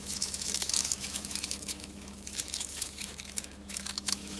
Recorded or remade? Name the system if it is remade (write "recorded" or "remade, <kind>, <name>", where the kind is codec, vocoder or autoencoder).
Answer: remade, autoencoder, DAC-VAE